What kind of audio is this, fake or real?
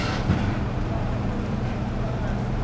fake